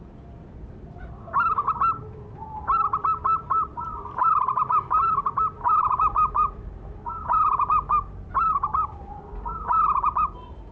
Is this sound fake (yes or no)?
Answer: yes